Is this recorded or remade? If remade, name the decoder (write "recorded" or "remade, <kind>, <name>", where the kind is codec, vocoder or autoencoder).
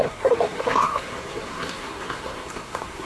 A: remade, codec, SNAC